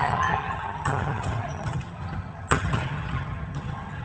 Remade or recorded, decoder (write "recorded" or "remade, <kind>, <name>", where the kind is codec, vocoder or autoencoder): remade, vocoder, HiFi-GAN